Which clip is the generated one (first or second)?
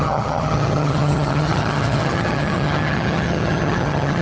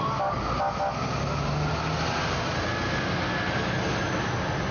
first